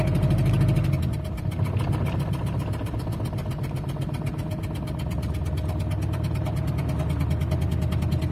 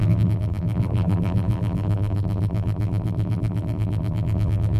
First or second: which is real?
first